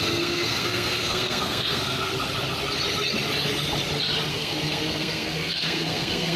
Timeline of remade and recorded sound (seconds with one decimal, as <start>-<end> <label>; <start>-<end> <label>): 0.0-2.1 remade; 2.1-4.3 recorded; 4.3-6.4 remade